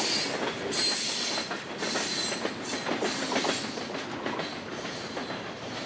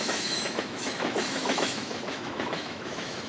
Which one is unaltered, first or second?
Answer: first